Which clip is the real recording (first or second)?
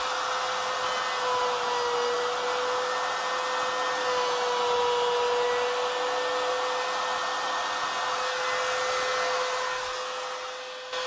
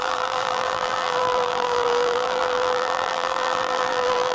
first